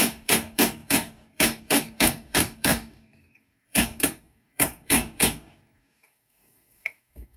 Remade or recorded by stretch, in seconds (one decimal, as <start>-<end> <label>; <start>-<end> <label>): 0.0-7.4 remade